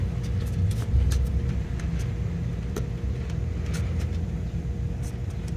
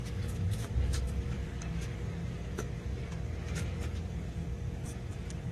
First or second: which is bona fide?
first